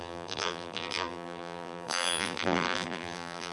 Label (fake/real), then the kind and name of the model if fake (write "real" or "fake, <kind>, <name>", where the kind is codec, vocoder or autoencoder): fake, vocoder, BigVGAN v2